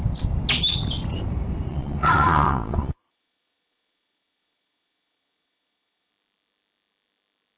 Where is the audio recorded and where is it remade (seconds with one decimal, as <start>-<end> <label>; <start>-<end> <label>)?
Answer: 0.0-1.7 recorded; 1.7-6.1 remade; 6.1-7.6 recorded